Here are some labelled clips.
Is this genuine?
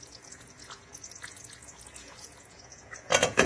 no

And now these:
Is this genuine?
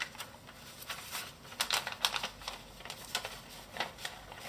yes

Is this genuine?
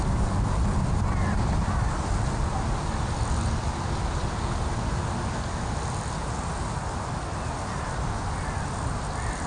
yes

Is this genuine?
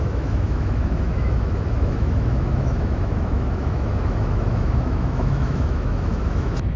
no